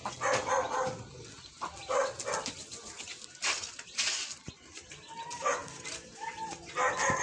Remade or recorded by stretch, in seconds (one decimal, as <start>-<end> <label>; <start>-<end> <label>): 0.0-7.2 recorded

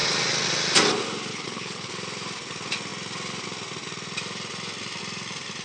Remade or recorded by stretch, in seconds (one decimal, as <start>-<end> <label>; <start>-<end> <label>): 0.0-1.3 recorded; 1.3-1.9 remade; 1.9-5.6 recorded

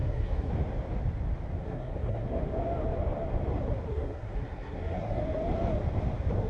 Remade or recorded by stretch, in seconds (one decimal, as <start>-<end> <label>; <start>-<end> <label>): 0.0-0.5 remade; 0.5-1.6 recorded; 1.6-2.4 remade; 2.4-3.9 recorded; 3.9-5.2 remade; 5.2-6.5 recorded

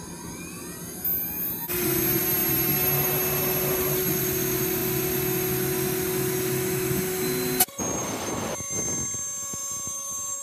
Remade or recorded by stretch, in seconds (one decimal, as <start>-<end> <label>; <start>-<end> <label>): 0.0-9.6 recorded; 9.6-10.4 remade

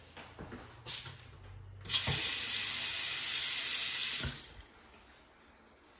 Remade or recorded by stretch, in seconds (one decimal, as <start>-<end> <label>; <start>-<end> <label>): 0.0-6.0 recorded

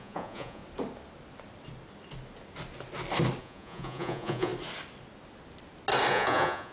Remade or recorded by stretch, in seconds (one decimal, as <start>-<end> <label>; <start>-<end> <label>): 0.0-0.6 remade; 0.6-3.4 recorded; 3.4-4.5 remade; 4.5-6.1 recorded; 6.1-6.7 remade